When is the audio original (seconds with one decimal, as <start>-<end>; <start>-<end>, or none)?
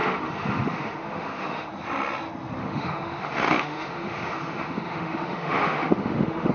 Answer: 1.7-2.6